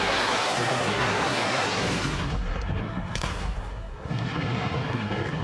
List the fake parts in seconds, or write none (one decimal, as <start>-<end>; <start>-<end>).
0.0-5.4